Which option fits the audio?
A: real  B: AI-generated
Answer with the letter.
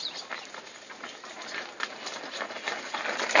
A